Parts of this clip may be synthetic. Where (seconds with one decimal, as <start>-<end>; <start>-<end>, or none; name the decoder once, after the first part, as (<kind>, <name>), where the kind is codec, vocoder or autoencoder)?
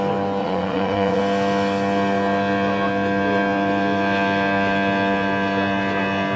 0.4-1.2 (vocoder, Vocos)